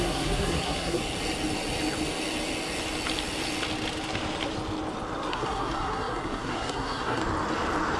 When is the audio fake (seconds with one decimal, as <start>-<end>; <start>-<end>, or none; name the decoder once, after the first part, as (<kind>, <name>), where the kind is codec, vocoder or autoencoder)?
0.0-1.0 (codec, SNAC); 5.3-7.2